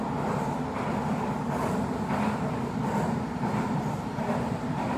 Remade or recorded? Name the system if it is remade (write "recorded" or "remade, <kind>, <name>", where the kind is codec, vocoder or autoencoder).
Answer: recorded